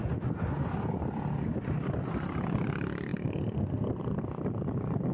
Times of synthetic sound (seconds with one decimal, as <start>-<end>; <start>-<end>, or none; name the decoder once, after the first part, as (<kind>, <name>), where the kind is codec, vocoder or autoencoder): 0.0-5.1 (vocoder, BigVGAN v2)